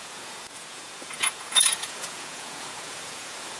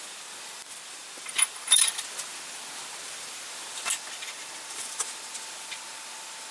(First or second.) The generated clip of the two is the first